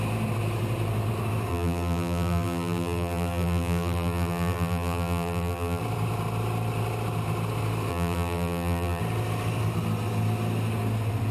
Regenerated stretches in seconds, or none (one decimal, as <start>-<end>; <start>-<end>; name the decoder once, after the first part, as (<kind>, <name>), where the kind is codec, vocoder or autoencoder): 1.5-5.8 (vocoder, BigVGAN v2); 7.9-9.0